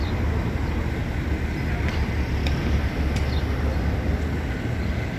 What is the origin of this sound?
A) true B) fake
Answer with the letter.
A